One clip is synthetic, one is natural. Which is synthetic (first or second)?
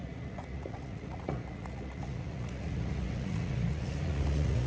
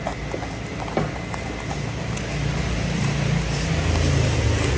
first